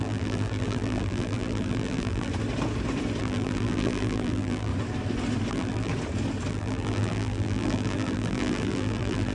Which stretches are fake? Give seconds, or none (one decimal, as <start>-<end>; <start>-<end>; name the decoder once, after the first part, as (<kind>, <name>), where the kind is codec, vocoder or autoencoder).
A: 0.0-2.3 (vocoder, BigVGAN v2); 3.2-4.7; 5.5-5.9; 6.5-9.3